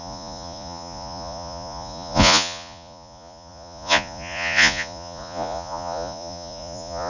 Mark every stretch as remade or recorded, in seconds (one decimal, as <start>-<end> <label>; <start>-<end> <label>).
0.0-7.1 remade